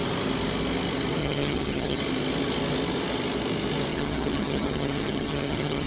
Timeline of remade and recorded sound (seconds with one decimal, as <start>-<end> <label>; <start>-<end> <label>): 0.0-1.2 recorded; 1.2-2.0 remade; 2.0-3.9 recorded; 3.9-5.9 remade